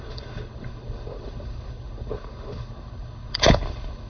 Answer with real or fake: fake